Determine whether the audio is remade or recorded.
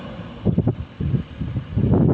recorded